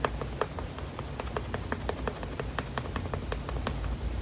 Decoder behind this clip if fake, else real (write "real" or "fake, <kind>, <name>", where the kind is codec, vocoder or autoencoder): real